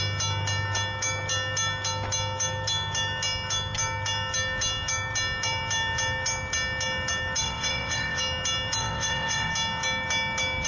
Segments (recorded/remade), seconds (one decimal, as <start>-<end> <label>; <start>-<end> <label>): 0.0-7.4 recorded; 7.4-8.2 remade; 8.2-8.8 recorded; 8.8-9.5 remade; 9.5-10.7 recorded